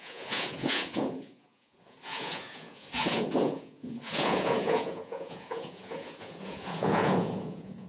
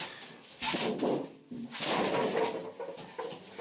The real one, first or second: second